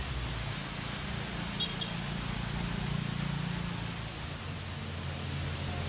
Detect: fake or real real